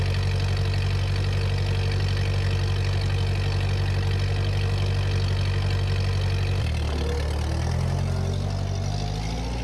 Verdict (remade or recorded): recorded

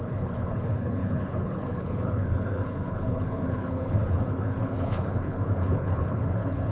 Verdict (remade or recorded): remade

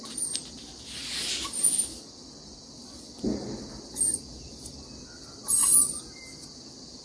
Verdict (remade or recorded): recorded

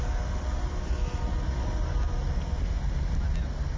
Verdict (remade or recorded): recorded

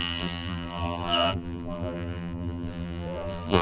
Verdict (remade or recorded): remade